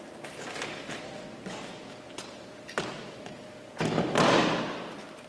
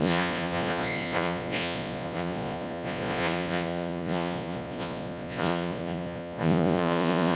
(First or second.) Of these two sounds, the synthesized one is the second